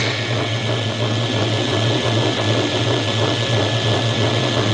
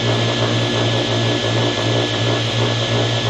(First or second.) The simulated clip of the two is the first